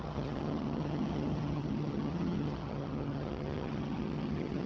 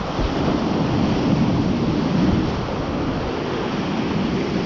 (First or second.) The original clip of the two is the second